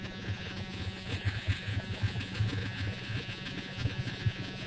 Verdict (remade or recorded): remade